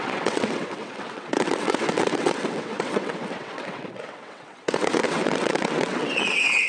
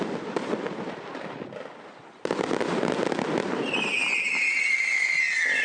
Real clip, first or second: second